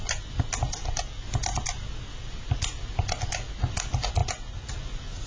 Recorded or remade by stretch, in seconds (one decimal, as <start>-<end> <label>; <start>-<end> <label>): 0.0-5.3 recorded